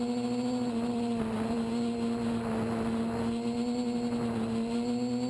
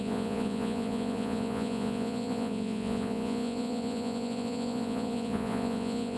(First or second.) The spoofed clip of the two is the second